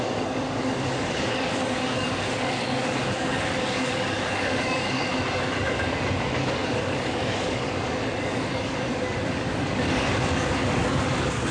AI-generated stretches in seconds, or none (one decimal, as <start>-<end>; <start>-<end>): 0.0-11.5